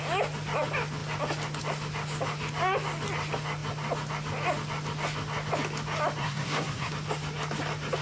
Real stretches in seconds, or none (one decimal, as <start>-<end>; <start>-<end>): 0.0-6.2; 6.9-8.0